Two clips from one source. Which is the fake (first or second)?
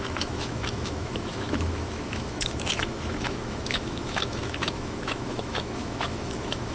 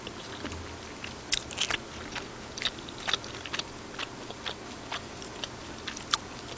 first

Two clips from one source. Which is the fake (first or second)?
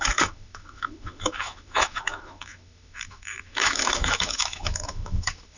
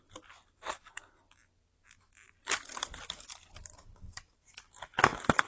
first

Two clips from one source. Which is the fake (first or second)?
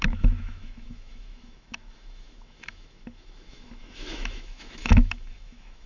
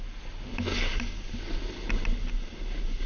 first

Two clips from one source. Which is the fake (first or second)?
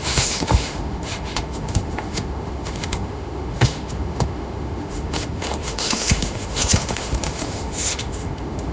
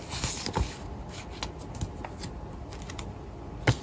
first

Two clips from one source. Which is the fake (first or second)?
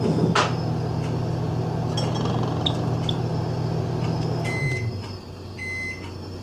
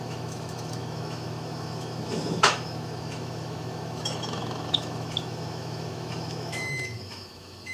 second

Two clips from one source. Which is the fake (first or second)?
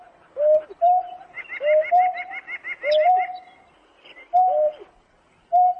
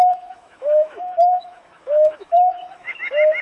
second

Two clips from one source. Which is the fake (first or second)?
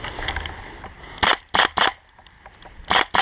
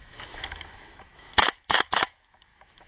second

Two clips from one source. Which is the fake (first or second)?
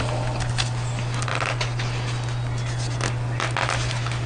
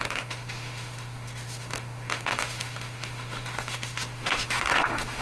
second